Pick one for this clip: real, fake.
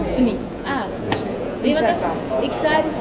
fake